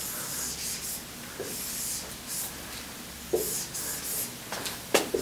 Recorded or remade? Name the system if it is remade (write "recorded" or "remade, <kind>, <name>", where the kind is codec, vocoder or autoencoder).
recorded